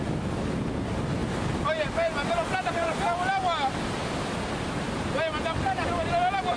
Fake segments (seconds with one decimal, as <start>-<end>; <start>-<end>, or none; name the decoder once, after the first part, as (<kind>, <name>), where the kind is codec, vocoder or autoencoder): none